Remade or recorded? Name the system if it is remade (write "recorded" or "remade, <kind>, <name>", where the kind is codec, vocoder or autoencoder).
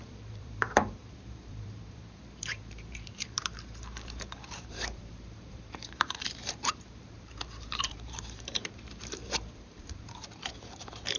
remade, vocoder, BigVGAN v2